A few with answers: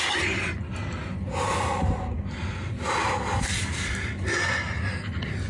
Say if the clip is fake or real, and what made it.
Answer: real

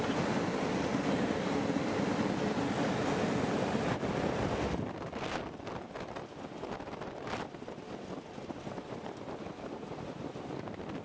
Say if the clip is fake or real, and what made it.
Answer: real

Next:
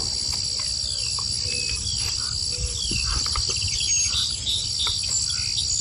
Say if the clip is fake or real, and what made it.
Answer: real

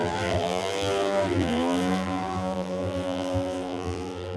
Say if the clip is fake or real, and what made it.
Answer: fake, vocoder, BigVGAN v2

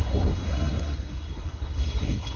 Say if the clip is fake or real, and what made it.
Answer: fake, codec, SNAC